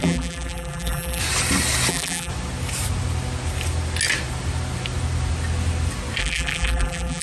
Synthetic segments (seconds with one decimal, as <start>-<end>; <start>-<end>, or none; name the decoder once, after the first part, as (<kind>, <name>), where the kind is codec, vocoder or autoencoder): 0.0-1.2 (vocoder, BigVGAN v2); 1.9-2.3; 6.2-7.2